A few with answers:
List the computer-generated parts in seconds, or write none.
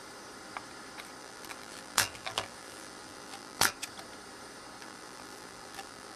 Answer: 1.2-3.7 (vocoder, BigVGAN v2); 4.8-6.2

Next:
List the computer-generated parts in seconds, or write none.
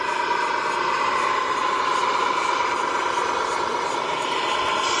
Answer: none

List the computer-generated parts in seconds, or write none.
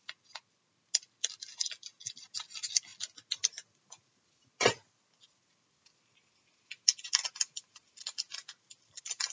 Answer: none